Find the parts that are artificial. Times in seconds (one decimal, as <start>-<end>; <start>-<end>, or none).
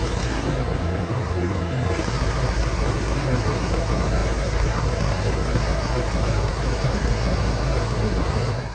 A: 0.0-8.7